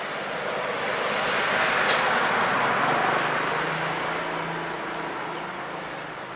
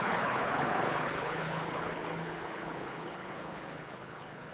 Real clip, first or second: first